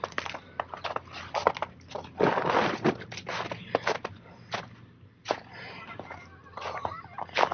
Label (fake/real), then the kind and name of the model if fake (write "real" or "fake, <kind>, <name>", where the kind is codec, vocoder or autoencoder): real